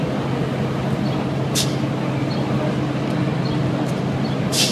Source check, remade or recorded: recorded